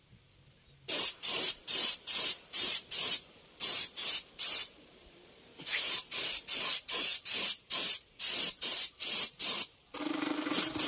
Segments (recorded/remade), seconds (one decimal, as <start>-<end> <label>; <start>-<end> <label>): 0.0-10.9 remade